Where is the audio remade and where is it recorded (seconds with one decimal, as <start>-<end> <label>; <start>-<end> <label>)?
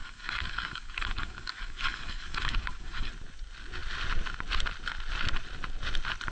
0.0-3.1 remade; 3.1-6.3 recorded